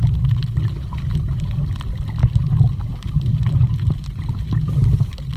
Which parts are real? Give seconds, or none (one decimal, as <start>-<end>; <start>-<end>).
0.0-5.4